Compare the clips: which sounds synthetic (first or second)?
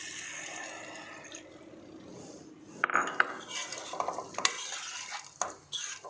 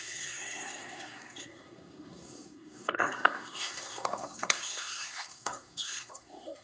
second